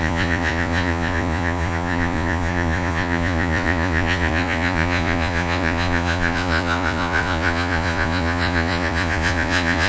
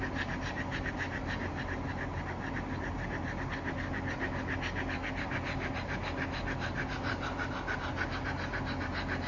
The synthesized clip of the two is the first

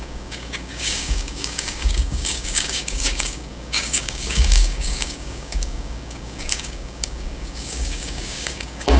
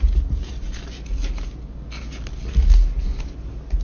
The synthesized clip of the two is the first